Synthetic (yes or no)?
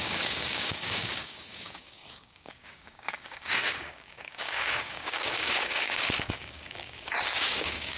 yes